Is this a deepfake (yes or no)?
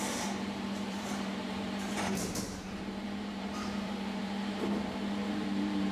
yes